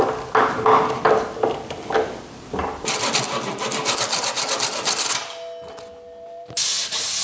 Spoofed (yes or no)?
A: no